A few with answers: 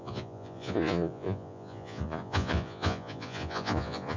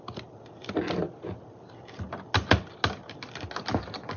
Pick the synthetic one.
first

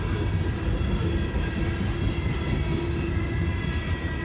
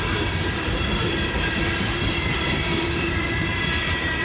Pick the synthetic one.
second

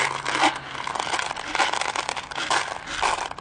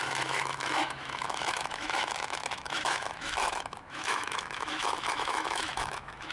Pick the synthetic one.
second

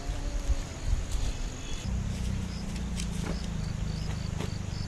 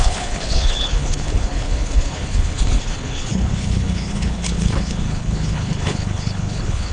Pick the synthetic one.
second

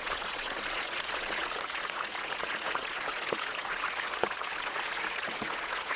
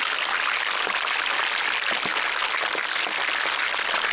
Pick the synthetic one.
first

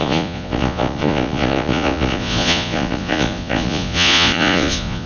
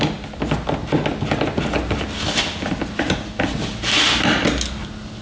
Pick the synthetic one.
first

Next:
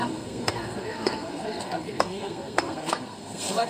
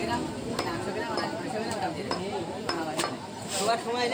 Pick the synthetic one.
first